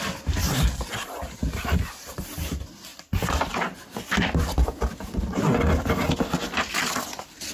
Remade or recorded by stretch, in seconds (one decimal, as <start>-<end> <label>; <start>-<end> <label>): 0.0-7.5 recorded